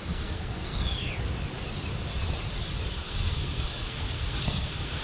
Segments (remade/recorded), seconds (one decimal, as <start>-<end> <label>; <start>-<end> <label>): 0.0-1.1 remade; 1.1-2.9 recorded; 2.9-5.0 remade